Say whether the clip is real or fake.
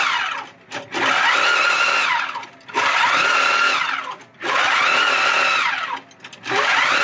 real